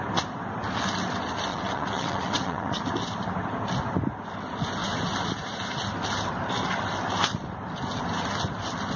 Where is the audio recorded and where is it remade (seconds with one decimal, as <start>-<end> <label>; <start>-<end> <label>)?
0.0-1.5 recorded; 1.5-2.8 remade; 2.8-9.0 recorded